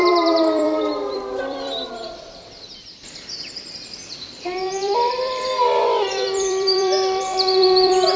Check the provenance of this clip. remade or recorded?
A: remade